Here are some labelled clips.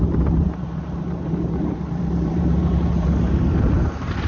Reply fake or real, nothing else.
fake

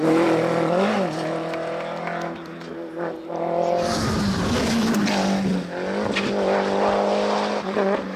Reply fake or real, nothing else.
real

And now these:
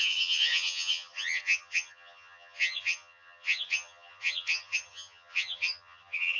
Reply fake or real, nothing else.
fake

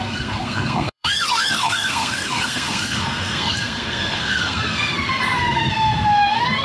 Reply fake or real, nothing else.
fake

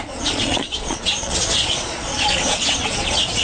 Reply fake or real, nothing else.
fake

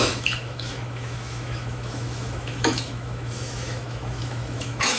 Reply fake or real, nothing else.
fake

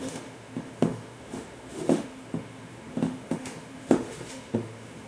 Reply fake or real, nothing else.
fake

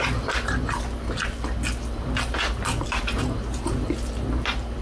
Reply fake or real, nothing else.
real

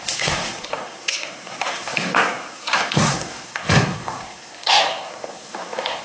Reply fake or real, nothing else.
fake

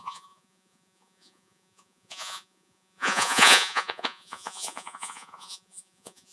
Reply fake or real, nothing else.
fake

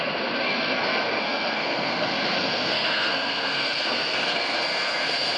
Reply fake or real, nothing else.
fake